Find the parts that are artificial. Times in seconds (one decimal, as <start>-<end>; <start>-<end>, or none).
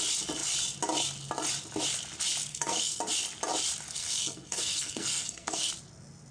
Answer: 2.5-3.0; 3.9-5.7